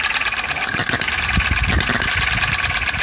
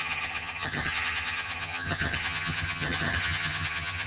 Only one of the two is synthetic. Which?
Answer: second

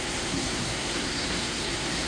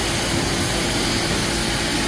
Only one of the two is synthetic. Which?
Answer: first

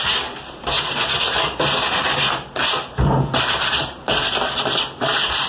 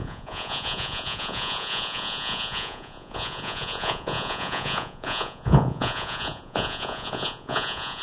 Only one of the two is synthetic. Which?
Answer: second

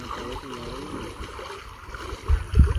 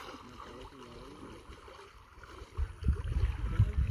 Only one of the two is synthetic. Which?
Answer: second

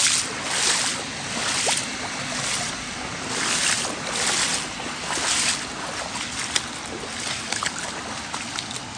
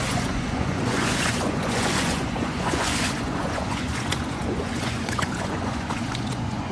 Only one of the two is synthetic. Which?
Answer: second